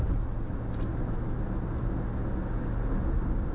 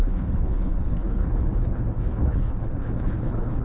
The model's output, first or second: second